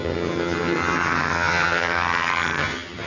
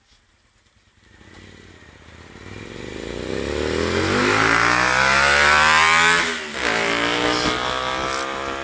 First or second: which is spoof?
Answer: first